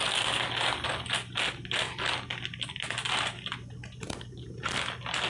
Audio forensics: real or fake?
real